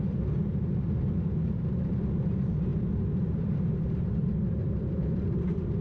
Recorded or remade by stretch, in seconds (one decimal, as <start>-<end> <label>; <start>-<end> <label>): 0.0-5.8 recorded